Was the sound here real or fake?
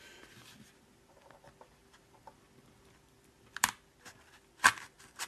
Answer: real